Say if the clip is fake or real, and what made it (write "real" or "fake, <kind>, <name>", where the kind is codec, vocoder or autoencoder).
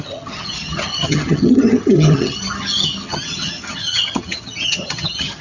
fake, vocoder, HiFi-GAN